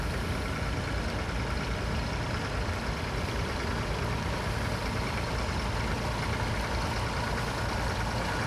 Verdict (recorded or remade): recorded